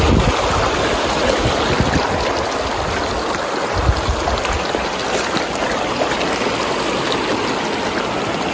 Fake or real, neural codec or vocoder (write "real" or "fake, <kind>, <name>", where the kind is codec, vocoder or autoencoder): real